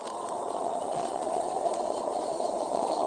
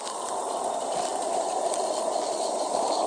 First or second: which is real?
second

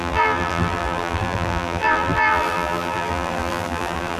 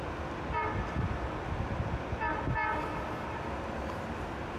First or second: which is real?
second